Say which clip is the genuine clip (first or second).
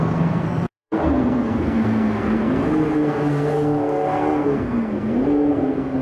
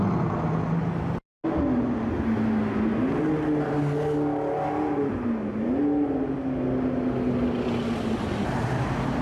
second